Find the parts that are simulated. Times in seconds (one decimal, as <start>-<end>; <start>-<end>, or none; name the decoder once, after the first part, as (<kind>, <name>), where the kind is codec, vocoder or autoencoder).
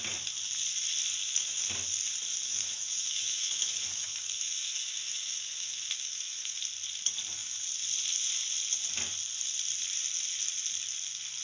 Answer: 1.2-1.7 (autoencoder, DAC-VAE); 2.3-6.6